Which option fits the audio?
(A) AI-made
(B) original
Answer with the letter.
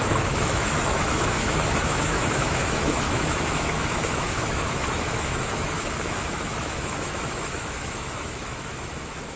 A